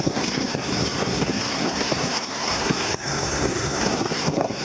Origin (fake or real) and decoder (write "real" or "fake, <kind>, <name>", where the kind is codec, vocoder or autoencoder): fake, codec, SNAC